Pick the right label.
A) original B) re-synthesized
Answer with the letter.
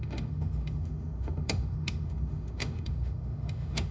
B